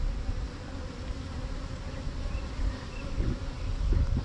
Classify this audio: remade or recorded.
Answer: recorded